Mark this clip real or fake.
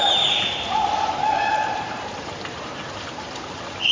fake